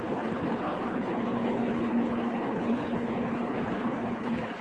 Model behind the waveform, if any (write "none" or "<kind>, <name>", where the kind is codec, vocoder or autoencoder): codec, HILCodec